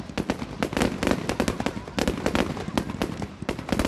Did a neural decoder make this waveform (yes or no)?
no